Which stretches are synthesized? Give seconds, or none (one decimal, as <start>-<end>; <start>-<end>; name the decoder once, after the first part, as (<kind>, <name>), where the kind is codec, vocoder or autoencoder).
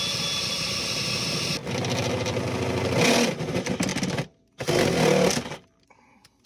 none